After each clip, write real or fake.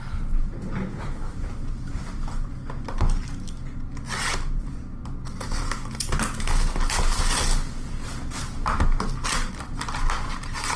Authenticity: real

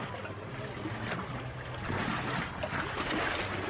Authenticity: real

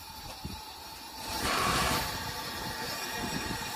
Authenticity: fake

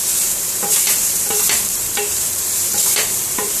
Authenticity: fake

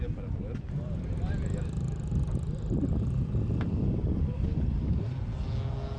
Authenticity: real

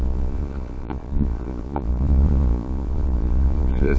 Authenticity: fake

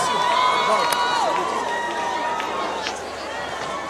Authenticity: real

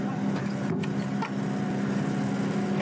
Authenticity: real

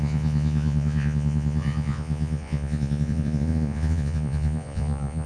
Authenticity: fake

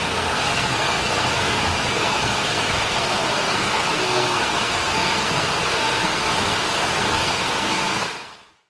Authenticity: fake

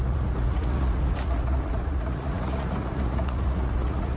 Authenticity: fake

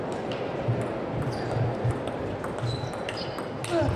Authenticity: real